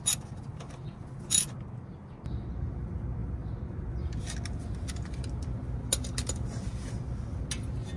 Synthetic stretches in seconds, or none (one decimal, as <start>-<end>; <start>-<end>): none